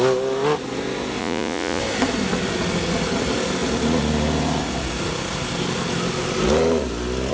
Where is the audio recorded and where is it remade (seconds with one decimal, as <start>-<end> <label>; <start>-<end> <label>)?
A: 0.0-1.2 recorded; 1.2-1.8 remade; 1.8-7.3 recorded